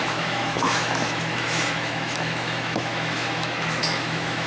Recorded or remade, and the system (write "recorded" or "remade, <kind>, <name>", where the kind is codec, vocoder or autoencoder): remade, autoencoder, DAC-VAE